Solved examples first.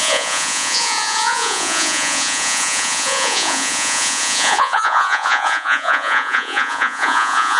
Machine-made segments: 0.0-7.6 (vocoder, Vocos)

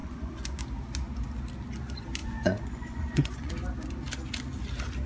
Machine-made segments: 0.0-0.6 (vocoder, Vocos); 2.2-3.5

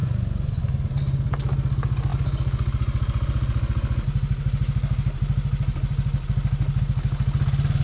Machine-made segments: 0.0-0.6 (vocoder, Vocos)

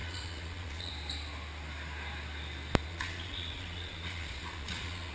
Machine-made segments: 0.0-0.9 (vocoder, Vocos); 2.9-5.1

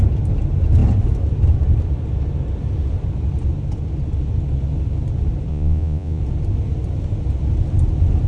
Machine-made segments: 5.5-6.2 (vocoder, Vocos)

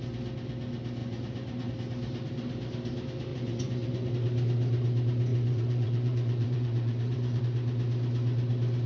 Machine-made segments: 1.0-1.7 (vocoder, Vocos); 3.3-4.1; 5.3-7.4